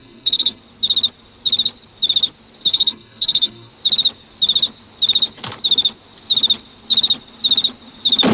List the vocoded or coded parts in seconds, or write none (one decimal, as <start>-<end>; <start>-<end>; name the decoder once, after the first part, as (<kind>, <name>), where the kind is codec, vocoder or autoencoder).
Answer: 0.0-0.6 (codec, SNAC); 2.7-3.7